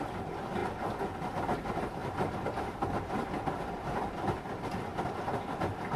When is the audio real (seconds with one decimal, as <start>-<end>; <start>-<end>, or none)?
0.6-1.3